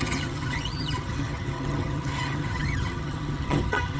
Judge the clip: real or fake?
fake